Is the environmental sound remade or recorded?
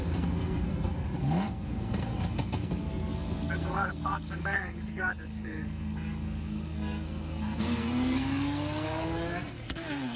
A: remade